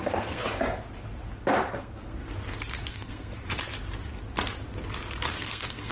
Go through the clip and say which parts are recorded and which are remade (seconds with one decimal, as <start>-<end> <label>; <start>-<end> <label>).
0.0-0.4 remade; 0.4-1.8 recorded; 1.8-2.2 remade; 2.2-2.9 recorded; 2.9-3.3 remade; 3.3-5.3 recorded; 5.3-5.9 remade